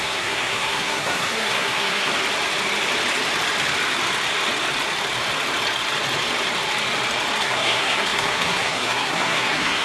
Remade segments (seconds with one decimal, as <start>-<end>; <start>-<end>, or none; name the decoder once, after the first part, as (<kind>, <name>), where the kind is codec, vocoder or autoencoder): 0.0-2.1 (codec, SNAC); 7.4-9.8